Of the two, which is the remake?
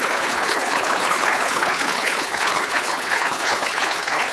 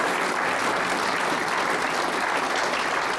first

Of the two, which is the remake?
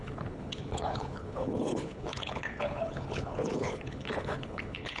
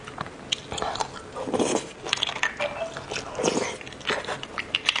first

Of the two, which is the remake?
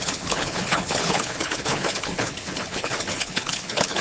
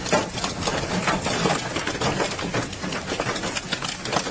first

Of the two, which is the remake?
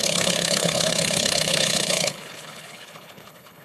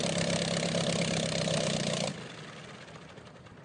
first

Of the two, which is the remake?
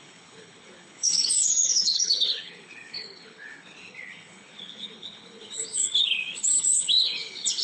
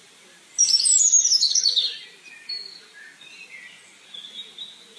first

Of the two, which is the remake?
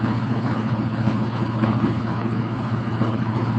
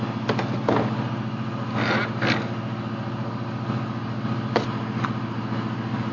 first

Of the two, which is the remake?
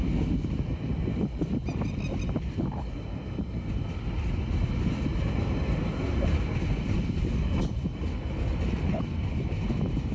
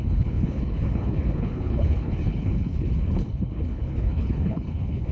second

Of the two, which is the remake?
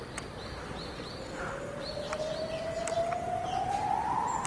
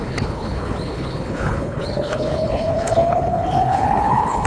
second